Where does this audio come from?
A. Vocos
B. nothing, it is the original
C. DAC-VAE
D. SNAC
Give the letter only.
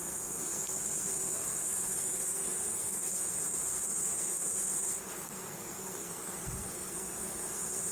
D